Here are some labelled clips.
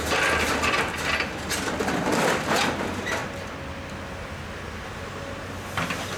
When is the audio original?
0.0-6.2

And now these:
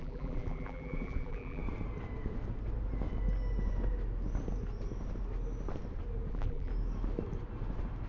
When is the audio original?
1.6-6.3; 6.7-8.1

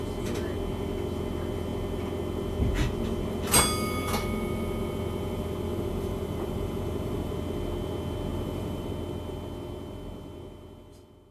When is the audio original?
0.0-5.7; 7.3-8.3; 8.9-11.3

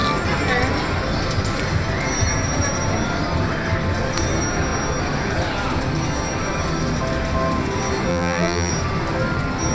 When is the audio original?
0.0-8.1; 8.7-9.7

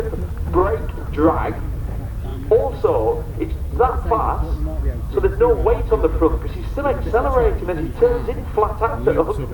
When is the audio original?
0.0-0.6; 1.8-9.5